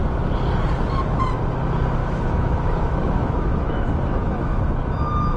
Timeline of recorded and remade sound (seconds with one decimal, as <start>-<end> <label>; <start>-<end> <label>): 0.0-2.0 recorded; 2.0-4.6 remade; 4.6-5.4 recorded